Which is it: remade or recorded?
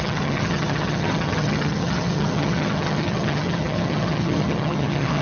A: remade